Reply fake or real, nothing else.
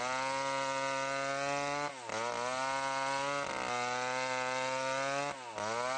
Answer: real